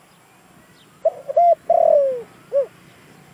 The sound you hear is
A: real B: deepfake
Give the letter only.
A